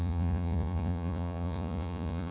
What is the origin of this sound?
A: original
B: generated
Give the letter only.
B